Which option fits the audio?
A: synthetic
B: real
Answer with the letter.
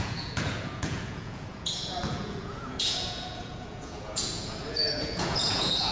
A